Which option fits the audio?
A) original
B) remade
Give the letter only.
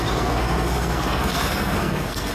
B